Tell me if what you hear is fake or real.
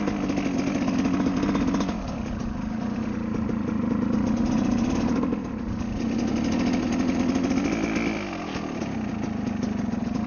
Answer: real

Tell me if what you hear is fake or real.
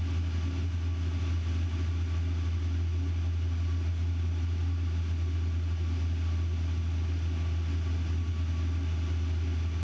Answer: real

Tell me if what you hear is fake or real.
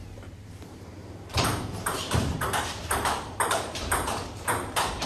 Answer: fake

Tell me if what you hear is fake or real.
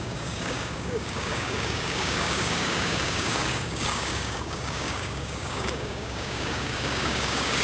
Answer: fake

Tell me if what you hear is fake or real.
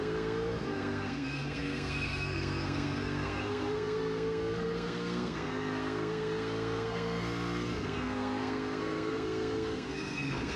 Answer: fake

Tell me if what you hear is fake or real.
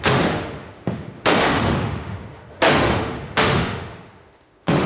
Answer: fake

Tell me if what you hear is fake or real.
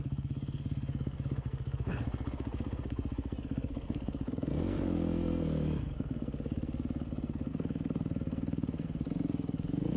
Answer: fake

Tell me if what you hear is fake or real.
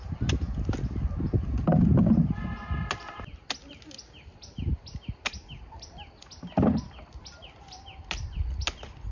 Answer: real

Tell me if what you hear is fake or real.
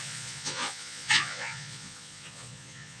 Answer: fake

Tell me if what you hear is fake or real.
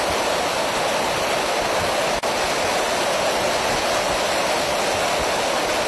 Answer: real